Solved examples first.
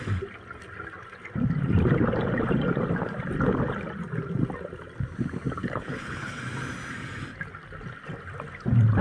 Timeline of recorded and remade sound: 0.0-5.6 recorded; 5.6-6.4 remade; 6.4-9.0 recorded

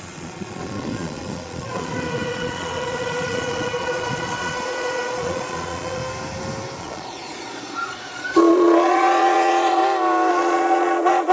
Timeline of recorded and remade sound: 0.0-6.0 remade; 6.0-6.8 recorded; 6.8-9.8 remade; 9.8-10.3 recorded; 10.3-11.3 remade

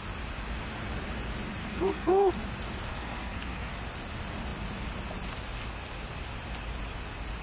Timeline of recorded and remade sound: 0.0-1.6 recorded; 1.6-2.3 remade; 2.3-2.9 recorded; 2.9-3.7 remade; 3.7-7.4 recorded

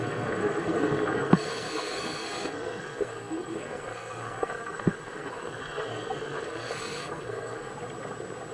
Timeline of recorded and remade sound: 0.0-7.7 remade; 7.7-8.5 recorded

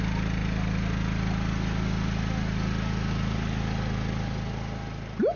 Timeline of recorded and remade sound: 0.0-5.4 recorded

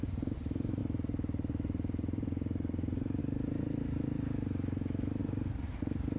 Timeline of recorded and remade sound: 0.0-6.2 remade

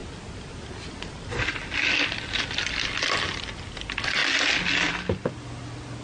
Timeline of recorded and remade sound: 0.0-6.0 recorded